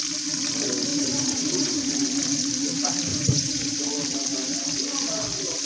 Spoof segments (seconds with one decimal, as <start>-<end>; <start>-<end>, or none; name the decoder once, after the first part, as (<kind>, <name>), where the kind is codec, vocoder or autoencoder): 0.9-1.9 (vocoder, Vocos); 3.1-3.8